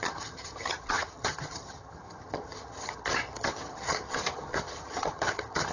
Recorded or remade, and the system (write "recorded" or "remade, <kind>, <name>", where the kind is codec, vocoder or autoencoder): remade, vocoder, HiFi-GAN